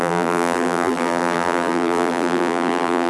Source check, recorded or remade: remade